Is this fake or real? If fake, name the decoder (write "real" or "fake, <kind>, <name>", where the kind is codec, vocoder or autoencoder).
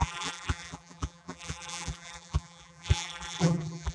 fake, vocoder, BigVGAN v2